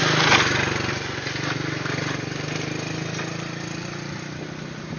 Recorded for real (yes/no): yes